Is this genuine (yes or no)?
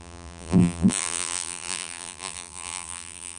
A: no